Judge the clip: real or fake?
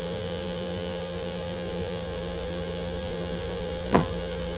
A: fake